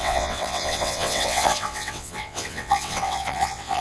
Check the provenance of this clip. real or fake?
fake